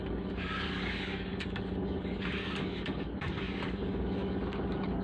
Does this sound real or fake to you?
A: fake